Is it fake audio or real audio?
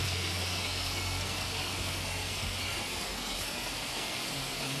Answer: fake